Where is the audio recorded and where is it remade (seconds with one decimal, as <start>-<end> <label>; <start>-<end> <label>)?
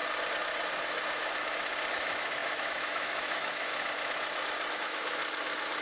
0.0-1.9 recorded; 1.9-3.7 remade; 3.7-4.7 recorded; 4.7-5.2 remade; 5.2-5.8 recorded